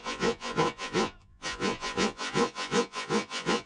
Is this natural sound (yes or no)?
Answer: no